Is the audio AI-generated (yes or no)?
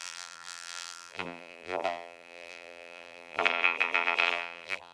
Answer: yes